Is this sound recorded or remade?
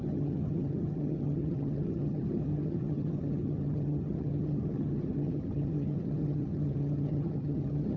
remade